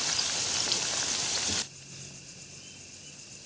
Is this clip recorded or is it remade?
recorded